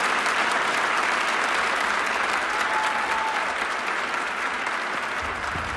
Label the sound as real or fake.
real